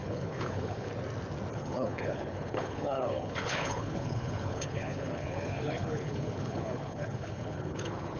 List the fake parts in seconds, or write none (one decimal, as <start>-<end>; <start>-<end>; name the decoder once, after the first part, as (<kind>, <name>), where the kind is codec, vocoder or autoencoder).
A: 0.0-0.9 (codec, HILCodec); 1.5-8.2